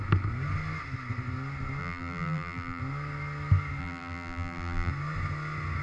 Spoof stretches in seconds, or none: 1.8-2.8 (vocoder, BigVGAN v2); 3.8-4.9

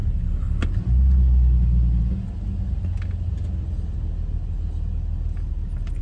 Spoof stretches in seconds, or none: none

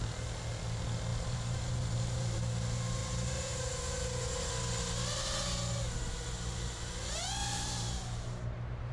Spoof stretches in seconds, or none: 1.1-2.4 (vocoder, BigVGAN v2); 3.0-4.5; 7.4-8.9

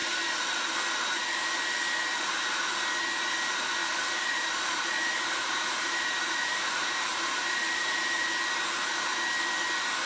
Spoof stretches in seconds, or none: 3.8-8.3 (vocoder, BigVGAN v2)

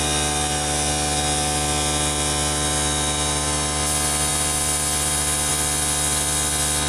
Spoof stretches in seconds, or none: none